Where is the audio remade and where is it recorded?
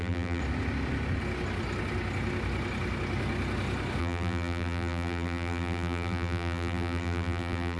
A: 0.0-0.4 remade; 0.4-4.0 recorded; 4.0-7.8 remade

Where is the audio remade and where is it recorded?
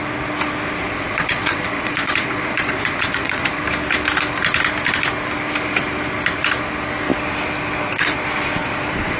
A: 0.0-0.8 recorded; 0.8-3.6 remade; 3.6-8.6 recorded; 8.6-9.2 remade